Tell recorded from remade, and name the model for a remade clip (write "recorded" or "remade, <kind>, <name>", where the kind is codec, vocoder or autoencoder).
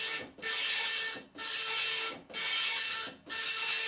recorded